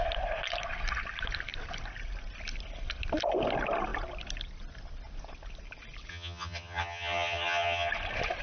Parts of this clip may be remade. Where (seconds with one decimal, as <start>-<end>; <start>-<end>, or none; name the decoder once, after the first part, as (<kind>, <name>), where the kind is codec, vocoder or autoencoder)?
6.1-7.9 (vocoder, HiFi-GAN)